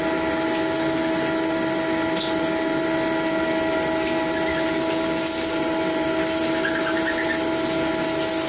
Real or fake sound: real